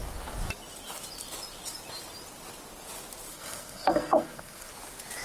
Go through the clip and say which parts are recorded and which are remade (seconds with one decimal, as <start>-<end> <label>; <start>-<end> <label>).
0.0-3.3 recorded; 3.3-4.7 remade; 4.7-5.2 recorded